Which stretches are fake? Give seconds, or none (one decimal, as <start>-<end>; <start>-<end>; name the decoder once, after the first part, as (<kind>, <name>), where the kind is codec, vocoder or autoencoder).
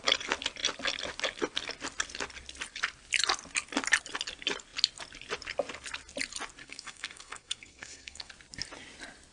6.6-8.3 (codec, SNAC)